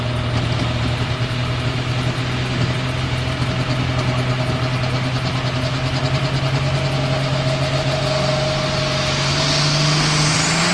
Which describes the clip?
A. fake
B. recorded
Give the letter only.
B